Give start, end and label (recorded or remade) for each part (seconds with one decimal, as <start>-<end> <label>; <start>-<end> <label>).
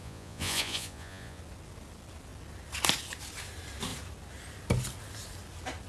0.0-1.4 remade; 1.4-5.9 recorded